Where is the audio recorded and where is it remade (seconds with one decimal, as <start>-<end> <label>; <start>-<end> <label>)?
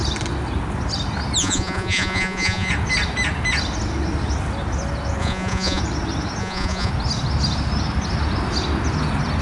0.0-1.4 recorded; 1.4-2.7 remade; 2.7-5.2 recorded; 5.2-5.8 remade; 5.8-6.4 recorded; 6.4-6.9 remade; 6.9-9.4 recorded